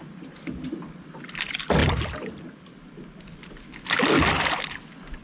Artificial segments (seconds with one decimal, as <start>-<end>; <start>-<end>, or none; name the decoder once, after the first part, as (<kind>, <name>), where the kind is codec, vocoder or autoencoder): none